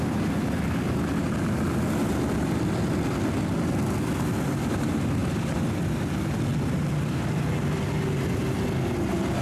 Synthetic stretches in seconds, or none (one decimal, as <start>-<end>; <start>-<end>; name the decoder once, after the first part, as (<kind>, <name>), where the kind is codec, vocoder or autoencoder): 5.2-5.8 (vocoder, BigVGAN v2)